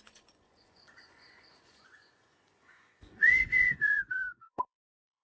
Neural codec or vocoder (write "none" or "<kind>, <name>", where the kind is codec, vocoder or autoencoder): vocoder, Vocos